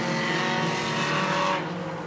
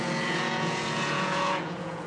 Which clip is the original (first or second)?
first